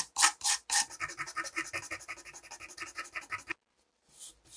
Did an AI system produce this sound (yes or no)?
no